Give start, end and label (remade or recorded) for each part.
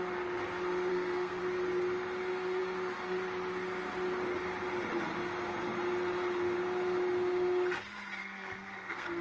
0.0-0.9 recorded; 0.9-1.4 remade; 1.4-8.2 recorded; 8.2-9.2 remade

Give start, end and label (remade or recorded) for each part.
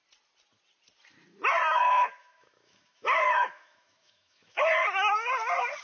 0.0-1.7 recorded; 1.7-4.6 remade; 4.6-5.8 recorded